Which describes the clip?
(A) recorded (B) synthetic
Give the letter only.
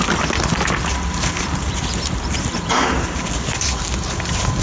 A